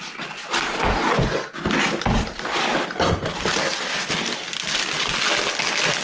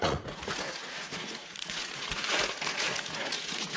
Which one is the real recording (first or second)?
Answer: first